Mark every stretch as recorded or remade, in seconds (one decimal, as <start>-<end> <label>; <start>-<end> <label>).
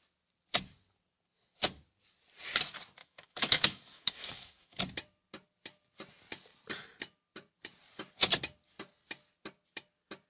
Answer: 0.0-3.0 recorded; 3.0-4.8 remade; 4.8-10.3 recorded